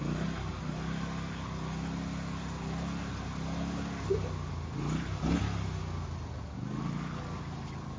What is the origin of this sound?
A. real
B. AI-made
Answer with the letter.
A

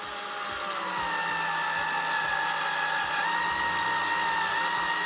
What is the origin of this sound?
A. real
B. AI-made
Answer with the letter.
A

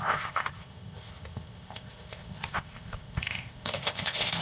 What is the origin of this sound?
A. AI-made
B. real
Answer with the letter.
A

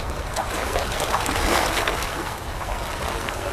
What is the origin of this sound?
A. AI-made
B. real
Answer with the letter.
A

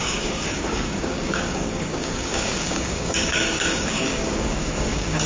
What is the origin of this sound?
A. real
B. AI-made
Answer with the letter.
B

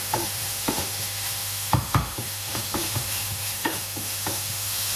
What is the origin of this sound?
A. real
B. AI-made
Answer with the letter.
B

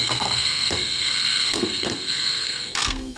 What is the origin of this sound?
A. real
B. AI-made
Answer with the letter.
B